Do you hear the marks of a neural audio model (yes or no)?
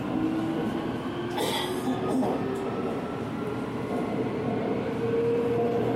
no